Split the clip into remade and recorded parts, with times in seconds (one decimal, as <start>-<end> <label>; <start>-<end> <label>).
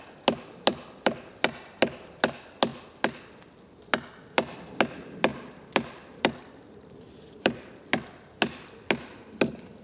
0.0-0.7 recorded; 0.7-1.2 remade; 1.2-5.3 recorded; 5.3-7.8 remade; 7.8-9.8 recorded